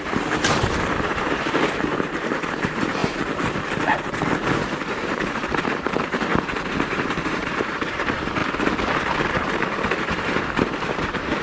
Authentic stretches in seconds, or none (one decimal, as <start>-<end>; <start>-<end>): 3.0-4.9; 6.3-6.8; 8.4-9.2